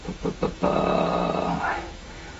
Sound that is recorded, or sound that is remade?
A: remade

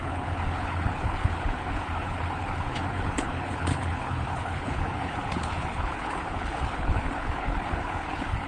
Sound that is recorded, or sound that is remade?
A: remade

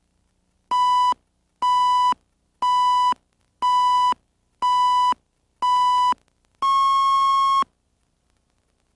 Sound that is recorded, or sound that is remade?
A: recorded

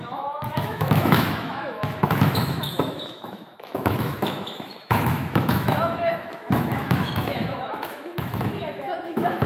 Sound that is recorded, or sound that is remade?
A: remade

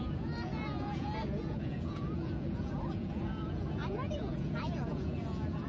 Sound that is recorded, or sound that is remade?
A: remade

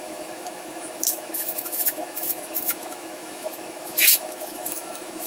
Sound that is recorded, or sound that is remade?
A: remade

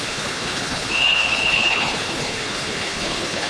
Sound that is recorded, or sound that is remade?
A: remade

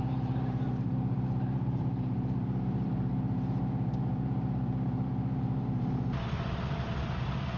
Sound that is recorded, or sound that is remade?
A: remade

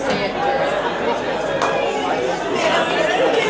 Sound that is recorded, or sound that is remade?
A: recorded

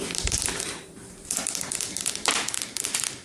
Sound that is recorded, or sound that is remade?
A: recorded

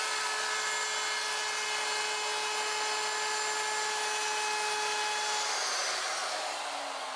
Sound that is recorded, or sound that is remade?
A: recorded